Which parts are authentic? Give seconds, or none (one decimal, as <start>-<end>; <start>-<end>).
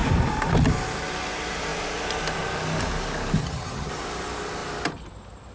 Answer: 0.0-3.4; 3.9-5.5